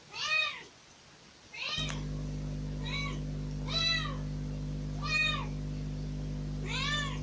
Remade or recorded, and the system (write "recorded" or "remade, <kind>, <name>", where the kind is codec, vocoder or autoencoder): recorded